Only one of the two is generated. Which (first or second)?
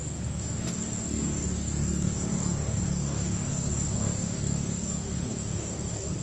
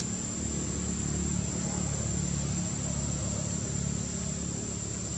first